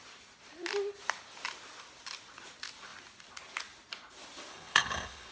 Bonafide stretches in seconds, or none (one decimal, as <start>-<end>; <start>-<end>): 0.0-4.5